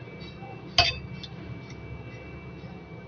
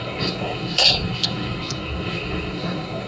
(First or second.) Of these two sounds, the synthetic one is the second